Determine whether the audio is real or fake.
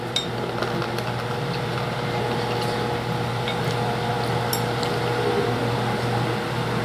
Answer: real